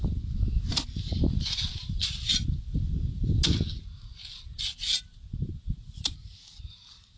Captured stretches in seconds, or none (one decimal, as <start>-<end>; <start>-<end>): 0.0-7.2